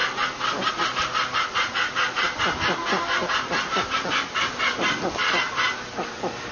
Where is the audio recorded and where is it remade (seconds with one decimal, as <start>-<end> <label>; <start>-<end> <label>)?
0.0-6.5 recorded